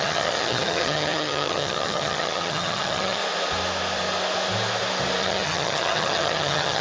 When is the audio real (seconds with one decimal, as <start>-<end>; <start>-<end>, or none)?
3.2-5.2